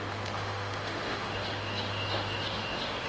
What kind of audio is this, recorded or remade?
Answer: remade